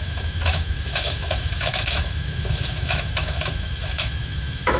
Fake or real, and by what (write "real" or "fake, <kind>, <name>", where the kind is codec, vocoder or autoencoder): fake, autoencoder, DAC-VAE